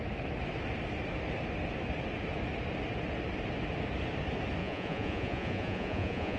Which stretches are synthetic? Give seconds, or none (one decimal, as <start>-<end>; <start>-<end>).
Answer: 4.6-6.4